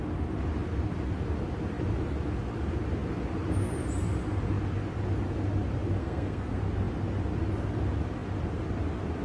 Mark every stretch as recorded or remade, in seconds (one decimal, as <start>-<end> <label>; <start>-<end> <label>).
0.0-6.0 recorded; 6.0-6.6 remade; 6.6-9.2 recorded